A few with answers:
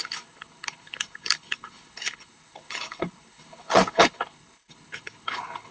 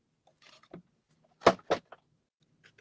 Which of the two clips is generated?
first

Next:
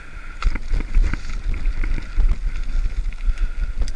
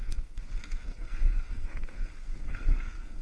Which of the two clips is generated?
second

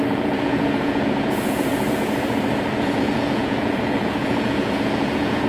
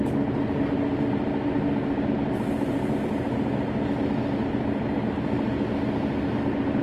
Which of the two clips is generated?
first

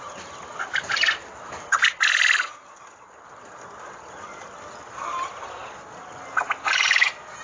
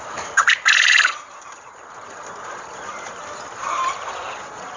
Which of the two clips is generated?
second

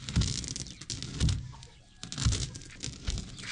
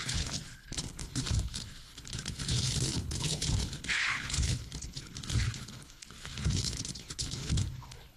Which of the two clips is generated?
second